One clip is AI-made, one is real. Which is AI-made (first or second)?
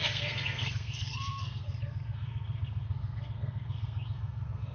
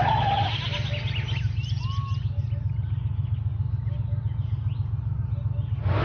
first